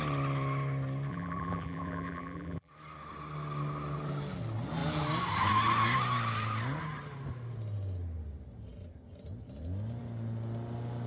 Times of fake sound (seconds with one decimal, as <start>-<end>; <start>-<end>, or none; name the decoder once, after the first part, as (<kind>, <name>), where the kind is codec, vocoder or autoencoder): 1.1-2.7 (vocoder, BigVGAN v2)